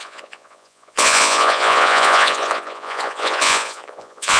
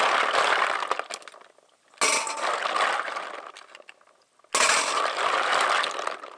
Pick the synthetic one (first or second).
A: first